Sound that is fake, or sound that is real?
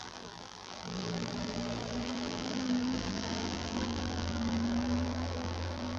fake